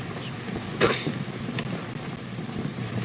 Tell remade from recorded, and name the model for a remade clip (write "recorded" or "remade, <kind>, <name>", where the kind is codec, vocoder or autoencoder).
recorded